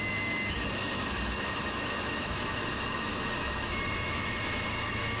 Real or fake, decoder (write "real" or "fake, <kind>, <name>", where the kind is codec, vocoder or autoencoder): fake, autoencoder, DAC-VAE